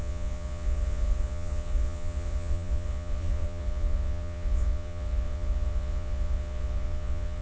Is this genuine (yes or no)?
no